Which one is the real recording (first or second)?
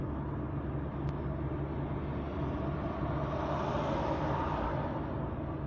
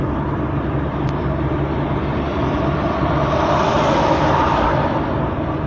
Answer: first